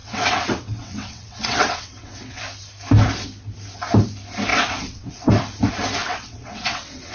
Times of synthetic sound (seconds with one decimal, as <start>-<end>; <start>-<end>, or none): 0.0-2.4; 4.5-5.3; 6.0-7.1